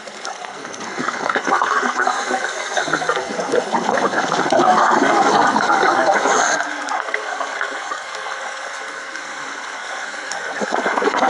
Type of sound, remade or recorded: remade